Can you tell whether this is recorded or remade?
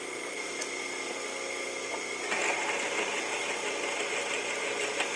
recorded